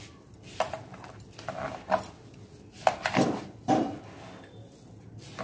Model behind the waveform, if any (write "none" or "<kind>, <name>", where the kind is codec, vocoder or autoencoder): none